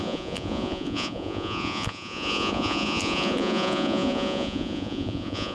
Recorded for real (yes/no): no